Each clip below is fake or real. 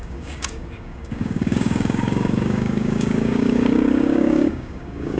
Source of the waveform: fake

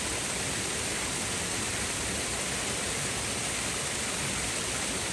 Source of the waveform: real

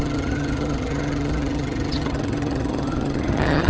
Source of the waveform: fake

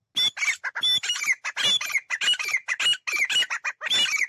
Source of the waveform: real